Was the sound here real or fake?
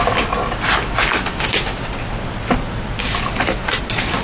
real